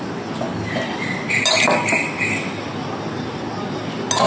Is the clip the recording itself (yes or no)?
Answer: yes